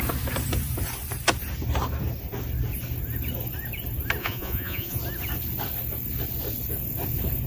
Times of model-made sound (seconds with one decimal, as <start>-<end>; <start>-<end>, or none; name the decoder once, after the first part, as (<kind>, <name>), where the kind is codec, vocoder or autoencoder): 4.2-5.0 (vocoder, Vocos)